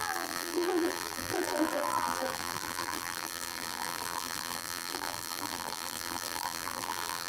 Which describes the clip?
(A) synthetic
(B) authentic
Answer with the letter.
A